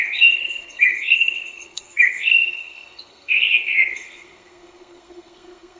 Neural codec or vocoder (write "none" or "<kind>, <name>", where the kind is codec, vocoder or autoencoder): codec, SNAC